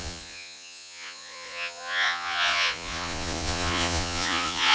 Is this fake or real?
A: fake